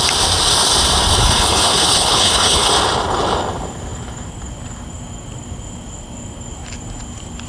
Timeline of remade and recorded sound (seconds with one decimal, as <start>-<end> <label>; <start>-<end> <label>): 0.0-1.2 recorded; 1.2-2.7 remade; 2.7-7.5 recorded